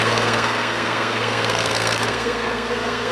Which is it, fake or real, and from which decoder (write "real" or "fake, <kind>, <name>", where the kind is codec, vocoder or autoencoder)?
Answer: fake, codec, SNAC